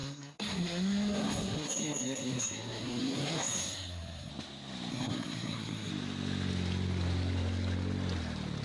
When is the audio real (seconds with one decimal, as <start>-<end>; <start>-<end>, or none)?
4.3-4.9; 5.9-8.6

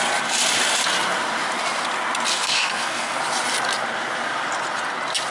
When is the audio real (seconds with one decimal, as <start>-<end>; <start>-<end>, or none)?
0.0-2.3; 3.2-5.3

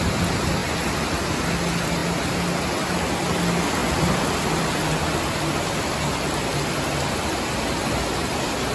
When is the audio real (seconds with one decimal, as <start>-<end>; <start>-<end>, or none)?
0.0-0.6; 1.3-3.8; 4.6-8.7

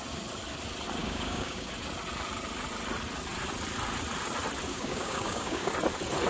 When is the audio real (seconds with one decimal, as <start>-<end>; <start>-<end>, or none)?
0.0-1.0; 1.7-4.7; 5.7-6.3